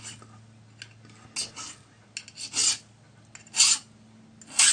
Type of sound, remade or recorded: recorded